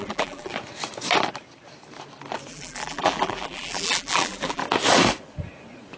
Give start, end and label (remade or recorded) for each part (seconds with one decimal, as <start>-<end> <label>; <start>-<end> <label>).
0.0-0.5 remade; 0.5-2.5 recorded; 2.5-4.6 remade; 4.6-6.0 recorded

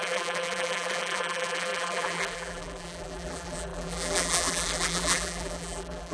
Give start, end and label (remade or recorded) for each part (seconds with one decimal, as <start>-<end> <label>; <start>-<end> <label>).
0.0-6.1 remade

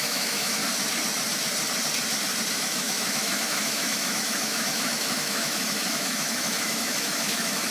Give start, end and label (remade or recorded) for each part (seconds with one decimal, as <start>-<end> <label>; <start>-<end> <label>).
0.0-0.6 remade; 0.6-2.5 recorded; 2.5-7.7 remade

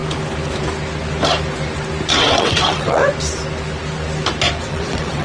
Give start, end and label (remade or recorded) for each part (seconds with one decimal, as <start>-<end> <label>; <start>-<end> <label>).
0.0-2.1 recorded; 2.1-3.0 remade; 3.0-4.6 recorded; 4.6-5.2 remade

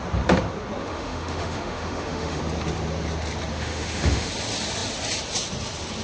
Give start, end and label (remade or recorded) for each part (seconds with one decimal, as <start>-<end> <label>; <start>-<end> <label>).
0.0-0.8 recorded; 0.8-2.4 remade; 2.4-3.5 recorded; 3.5-4.3 remade; 4.3-6.0 recorded

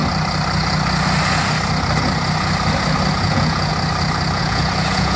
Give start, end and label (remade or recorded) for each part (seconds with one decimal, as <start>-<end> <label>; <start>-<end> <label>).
0.0-3.1 recorded; 3.1-3.7 remade; 3.7-4.4 recorded; 4.4-5.2 remade

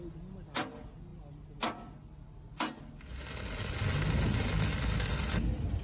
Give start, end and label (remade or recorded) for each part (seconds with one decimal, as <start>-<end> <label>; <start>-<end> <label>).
0.0-5.8 recorded